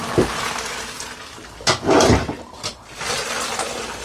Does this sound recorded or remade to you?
recorded